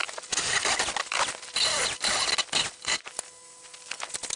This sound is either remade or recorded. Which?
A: recorded